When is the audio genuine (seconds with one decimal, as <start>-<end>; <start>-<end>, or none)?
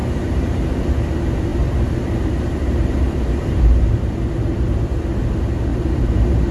0.8-1.5; 3.9-5.7